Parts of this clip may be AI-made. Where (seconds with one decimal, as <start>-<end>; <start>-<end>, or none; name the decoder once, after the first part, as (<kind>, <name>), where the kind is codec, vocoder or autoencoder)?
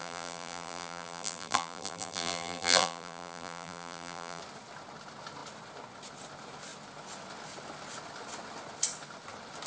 0.0-4.4 (vocoder, BigVGAN v2)